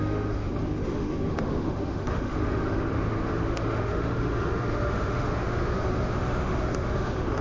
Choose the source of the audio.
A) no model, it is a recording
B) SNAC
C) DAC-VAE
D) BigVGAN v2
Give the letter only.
C